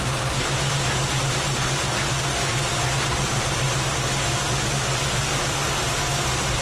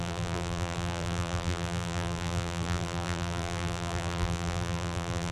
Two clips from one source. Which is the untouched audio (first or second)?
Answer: first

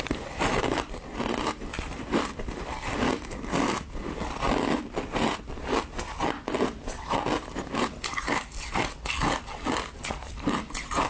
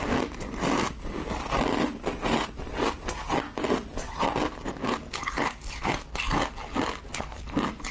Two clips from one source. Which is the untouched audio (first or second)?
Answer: second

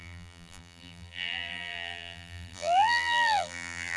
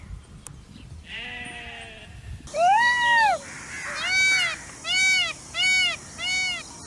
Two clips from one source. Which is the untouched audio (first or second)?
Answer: second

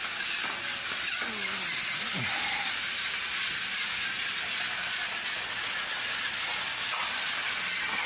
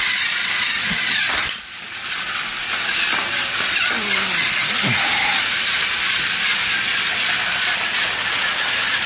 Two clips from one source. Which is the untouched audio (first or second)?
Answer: first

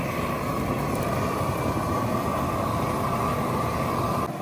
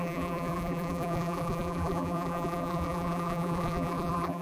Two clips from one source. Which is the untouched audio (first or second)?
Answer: first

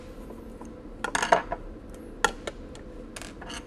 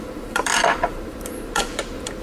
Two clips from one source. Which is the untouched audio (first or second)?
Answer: first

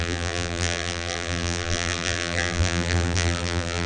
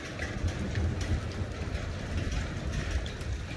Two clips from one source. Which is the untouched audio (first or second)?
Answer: second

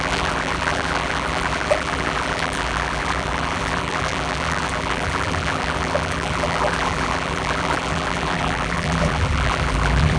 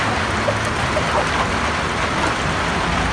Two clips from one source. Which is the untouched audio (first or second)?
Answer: second